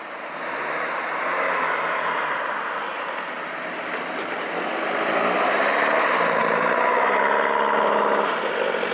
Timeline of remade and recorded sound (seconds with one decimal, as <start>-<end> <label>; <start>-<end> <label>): 0.0-8.9 recorded